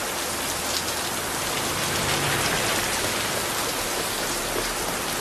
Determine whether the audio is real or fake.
real